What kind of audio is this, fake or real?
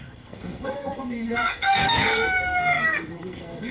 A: fake